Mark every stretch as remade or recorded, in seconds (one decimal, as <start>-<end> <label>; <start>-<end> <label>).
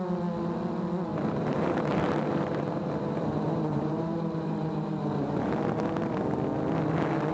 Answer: 0.0-1.1 recorded; 1.1-5.5 remade; 5.5-7.3 recorded